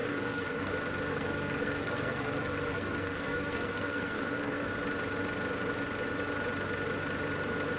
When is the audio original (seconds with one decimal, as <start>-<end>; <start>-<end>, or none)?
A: 0.7-1.1; 4.7-7.8